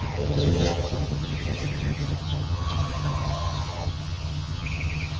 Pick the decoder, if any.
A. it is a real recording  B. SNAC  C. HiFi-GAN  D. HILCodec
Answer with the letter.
C